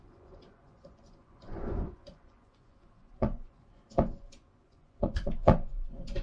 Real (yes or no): no